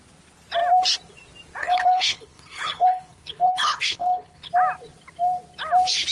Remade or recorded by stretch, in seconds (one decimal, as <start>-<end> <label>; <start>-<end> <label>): 0.0-1.6 recorded; 1.6-4.5 remade; 4.5-6.1 recorded